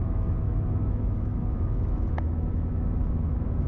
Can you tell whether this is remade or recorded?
remade